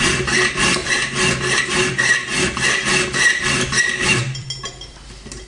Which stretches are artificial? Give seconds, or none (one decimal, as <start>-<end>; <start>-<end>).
0.0-5.5